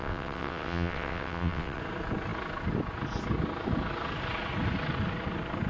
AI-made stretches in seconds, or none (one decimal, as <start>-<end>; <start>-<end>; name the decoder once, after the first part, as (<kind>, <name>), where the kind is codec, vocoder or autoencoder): 0.0-1.8 (vocoder, WaveNeXt)